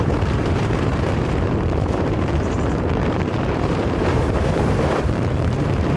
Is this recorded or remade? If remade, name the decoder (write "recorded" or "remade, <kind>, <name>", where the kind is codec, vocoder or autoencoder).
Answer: remade, vocoder, BigVGAN v2